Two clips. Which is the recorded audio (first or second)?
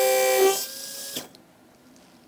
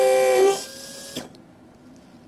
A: first